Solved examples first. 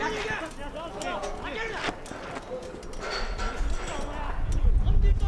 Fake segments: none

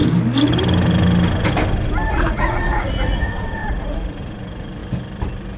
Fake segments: 2.1-4.8 (vocoder, Vocos)